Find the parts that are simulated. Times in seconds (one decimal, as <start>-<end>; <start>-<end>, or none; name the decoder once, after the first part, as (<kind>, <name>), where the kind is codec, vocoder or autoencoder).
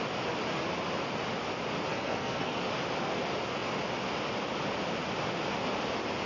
1.9-2.6 (codec, SNAC)